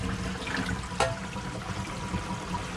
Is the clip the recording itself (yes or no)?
yes